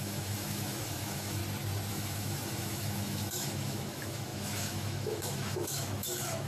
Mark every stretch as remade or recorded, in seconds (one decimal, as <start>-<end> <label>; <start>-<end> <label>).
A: 0.0-1.4 remade; 1.4-1.9 recorded; 1.9-6.5 remade